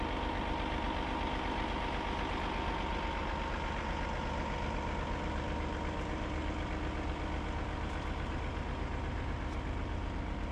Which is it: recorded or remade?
recorded